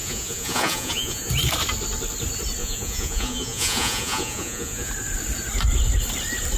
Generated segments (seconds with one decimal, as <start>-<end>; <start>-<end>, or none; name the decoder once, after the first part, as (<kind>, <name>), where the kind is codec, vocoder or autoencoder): 0.0-1.3 (vocoder, Vocos); 2.6-4.9